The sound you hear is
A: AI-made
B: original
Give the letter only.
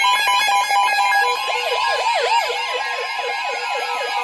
B